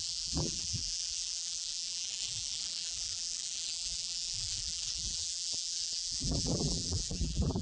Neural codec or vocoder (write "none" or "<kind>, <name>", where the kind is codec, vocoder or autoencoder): vocoder, BigVGAN v2